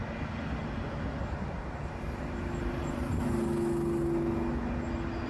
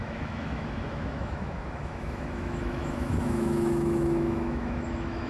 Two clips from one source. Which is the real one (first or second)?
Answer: first